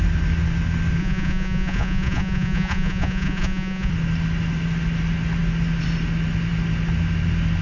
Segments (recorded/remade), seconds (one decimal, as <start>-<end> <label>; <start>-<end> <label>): 0.0-1.0 recorded; 1.0-3.9 remade; 3.9-7.6 recorded